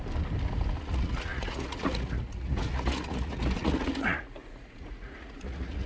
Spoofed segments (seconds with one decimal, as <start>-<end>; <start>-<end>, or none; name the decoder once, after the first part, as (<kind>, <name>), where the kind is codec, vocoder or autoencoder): 0.8-5.9 (vocoder, Vocos)